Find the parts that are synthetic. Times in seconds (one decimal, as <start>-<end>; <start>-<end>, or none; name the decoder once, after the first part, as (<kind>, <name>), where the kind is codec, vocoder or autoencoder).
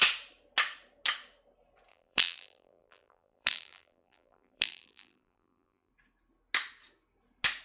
1.9-5.9 (vocoder, BigVGAN v2)